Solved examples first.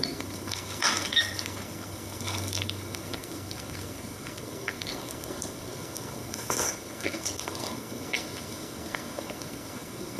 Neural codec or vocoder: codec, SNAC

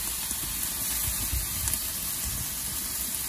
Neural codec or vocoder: none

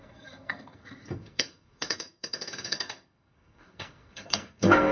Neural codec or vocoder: codec, SNAC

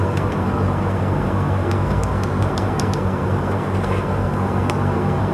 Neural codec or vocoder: codec, SNAC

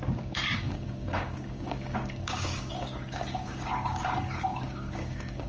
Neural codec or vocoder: codec, DAC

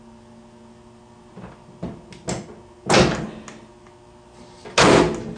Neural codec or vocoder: none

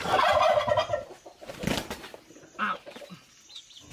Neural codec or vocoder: none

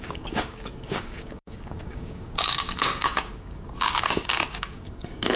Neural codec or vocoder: codec, DAC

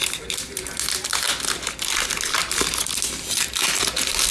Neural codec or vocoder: none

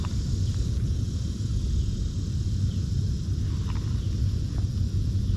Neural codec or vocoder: none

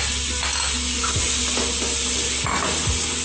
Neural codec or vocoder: none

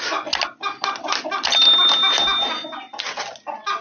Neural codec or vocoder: none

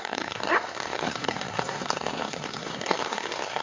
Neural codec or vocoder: codec, SNAC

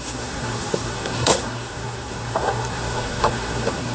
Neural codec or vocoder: codec, SNAC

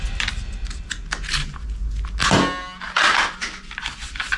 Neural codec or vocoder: none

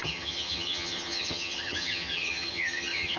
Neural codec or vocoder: vocoder, HiFi-GAN